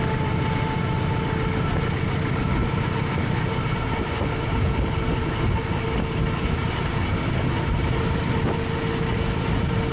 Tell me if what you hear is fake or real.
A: real